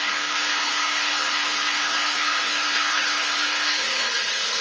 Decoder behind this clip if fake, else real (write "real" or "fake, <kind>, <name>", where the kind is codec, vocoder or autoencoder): fake, codec, HILCodec